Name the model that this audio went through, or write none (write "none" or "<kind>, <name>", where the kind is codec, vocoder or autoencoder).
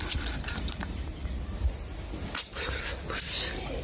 none